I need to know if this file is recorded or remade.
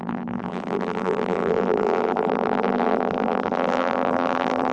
remade